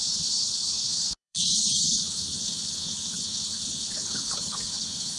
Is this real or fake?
fake